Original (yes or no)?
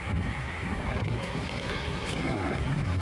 no